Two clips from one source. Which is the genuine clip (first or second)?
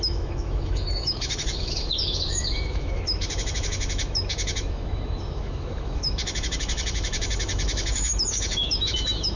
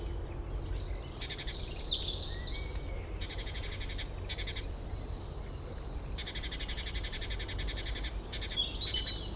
second